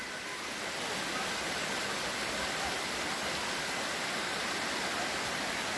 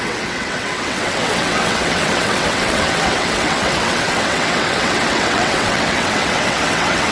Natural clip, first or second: first